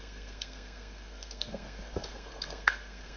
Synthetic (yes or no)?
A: yes